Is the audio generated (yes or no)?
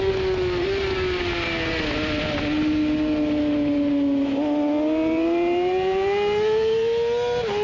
no